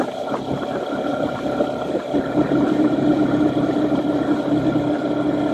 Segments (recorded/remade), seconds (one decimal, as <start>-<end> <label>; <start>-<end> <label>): 0.0-1.1 recorded; 1.1-3.9 remade; 3.9-5.5 recorded